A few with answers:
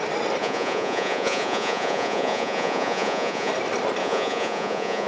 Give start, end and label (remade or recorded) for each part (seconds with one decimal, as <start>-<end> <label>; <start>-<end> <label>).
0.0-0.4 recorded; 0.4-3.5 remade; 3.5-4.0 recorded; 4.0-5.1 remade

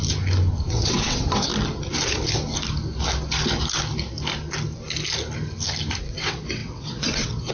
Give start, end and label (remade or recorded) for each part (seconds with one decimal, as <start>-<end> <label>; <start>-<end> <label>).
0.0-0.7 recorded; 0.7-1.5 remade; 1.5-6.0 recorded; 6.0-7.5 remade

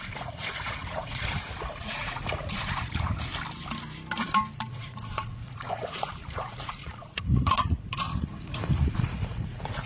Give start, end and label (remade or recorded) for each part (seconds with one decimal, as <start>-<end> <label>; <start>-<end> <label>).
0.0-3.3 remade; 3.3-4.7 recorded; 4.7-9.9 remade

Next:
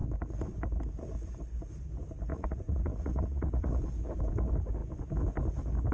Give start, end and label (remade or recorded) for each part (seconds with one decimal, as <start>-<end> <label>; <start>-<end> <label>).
0.0-2.3 recorded; 2.3-3.8 remade; 3.8-5.9 recorded

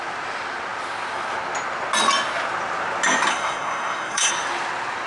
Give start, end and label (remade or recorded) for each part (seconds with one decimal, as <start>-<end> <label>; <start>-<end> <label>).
0.0-3.3 recorded; 3.3-4.3 remade; 4.3-5.1 recorded

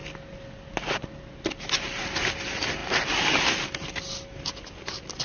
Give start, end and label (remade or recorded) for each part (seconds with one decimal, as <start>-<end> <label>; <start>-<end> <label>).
0.0-5.2 recorded

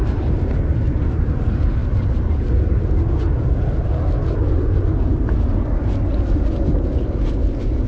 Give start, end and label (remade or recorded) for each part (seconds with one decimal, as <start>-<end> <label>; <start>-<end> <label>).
0.0-7.9 recorded